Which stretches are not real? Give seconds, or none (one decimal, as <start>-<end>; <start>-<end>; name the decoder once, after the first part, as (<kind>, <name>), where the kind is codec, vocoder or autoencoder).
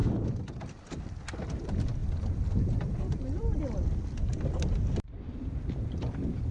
0.0-0.8 (vocoder, BigVGAN v2); 2.0-3.6